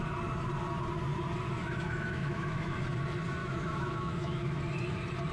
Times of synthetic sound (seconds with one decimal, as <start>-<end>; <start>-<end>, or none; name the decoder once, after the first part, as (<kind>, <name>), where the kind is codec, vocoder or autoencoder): 1.6-2.7 (autoencoder, DAC-VAE); 3.4-4.6